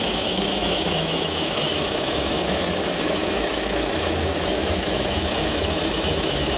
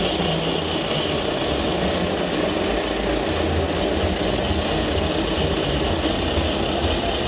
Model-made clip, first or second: first